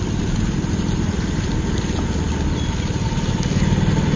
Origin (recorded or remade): recorded